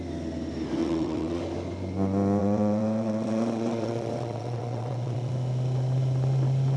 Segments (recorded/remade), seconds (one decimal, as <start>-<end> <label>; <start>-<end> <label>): 0.0-0.8 recorded; 0.8-1.4 remade; 1.4-2.4 recorded; 2.4-5.3 remade; 5.3-6.8 recorded